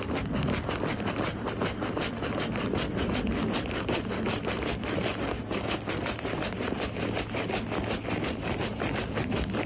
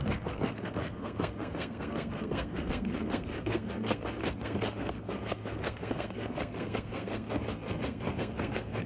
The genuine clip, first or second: first